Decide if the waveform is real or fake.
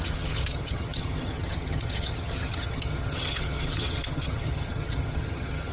fake